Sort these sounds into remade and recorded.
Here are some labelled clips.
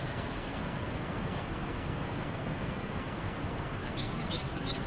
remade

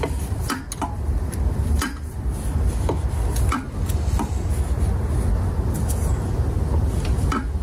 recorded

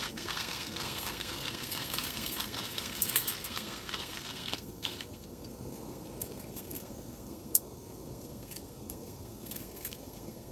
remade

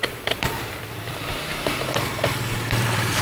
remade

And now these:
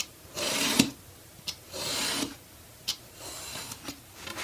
recorded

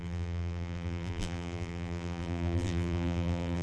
remade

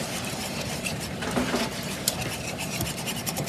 remade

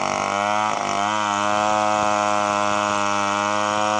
recorded